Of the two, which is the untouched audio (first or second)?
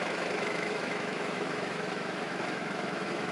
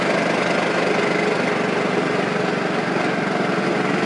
second